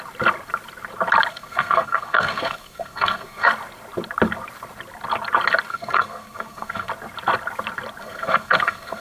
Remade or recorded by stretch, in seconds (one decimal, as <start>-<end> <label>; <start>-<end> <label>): 0.0-1.3 recorded; 1.3-3.5 remade; 3.5-5.7 recorded; 5.7-6.9 remade; 6.9-8.0 recorded; 8.0-9.0 remade